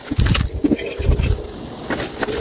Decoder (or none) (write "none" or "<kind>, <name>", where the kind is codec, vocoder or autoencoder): none